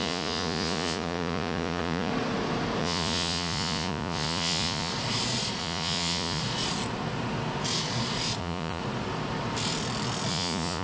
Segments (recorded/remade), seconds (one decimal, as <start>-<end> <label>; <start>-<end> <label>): 0.0-2.1 remade; 2.1-2.8 recorded; 2.8-4.9 remade; 4.9-5.6 recorded; 5.6-6.4 remade; 6.4-8.4 recorded; 8.4-8.8 remade; 8.8-10.3 recorded; 10.3-10.8 remade

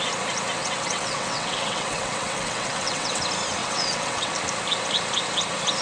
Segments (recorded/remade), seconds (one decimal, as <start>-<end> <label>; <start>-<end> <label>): 0.0-0.6 recorded; 0.6-3.2 remade; 3.2-3.6 recorded; 3.6-4.3 remade; 4.3-5.8 recorded

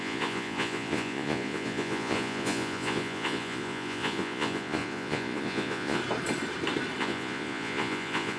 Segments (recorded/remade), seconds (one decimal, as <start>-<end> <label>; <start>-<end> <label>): 0.0-6.0 remade; 6.0-7.0 recorded; 7.0-8.4 remade

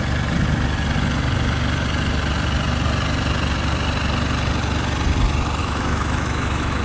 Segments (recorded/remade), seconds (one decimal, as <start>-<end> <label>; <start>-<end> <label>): 0.0-5.6 recorded; 5.6-6.8 remade

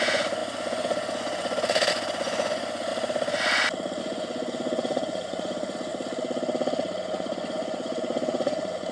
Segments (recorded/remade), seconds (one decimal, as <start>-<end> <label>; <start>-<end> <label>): 0.0-2.9 remade; 2.9-4.0 recorded; 4.0-5.9 remade; 5.9-7.0 recorded; 7.0-8.9 remade